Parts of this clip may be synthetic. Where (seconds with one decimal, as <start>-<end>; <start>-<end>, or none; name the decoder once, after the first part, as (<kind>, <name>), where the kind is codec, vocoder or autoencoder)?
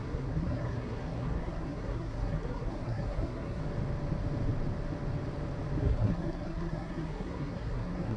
0.0-3.6 (codec, SNAC); 5.8-8.2